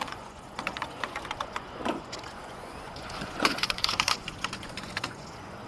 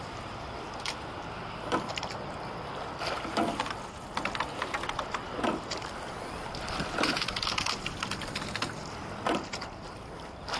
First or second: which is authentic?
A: second